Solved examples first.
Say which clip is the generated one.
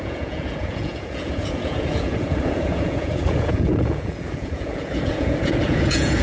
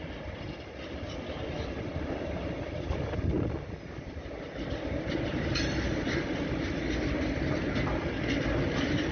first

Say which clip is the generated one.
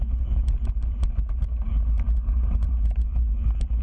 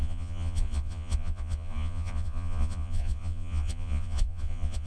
second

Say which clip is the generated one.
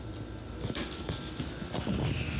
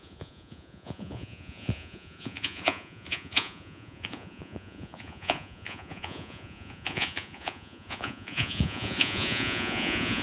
second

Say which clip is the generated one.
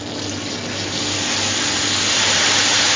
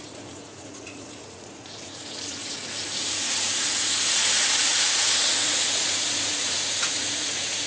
second